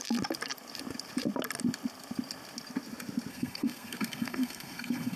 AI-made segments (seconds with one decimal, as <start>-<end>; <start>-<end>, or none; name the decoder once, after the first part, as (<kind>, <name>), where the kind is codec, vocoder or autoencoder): 3.3-5.2 (codec, SNAC)